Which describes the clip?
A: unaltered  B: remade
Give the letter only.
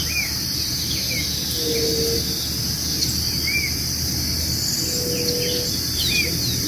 A